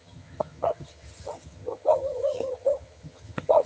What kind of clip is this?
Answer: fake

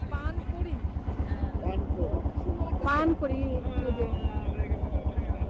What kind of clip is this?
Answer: real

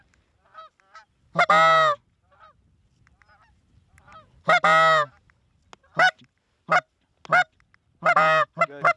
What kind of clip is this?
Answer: real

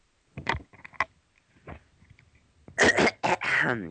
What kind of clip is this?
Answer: real